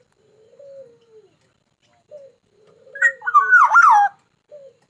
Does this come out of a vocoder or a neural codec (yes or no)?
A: no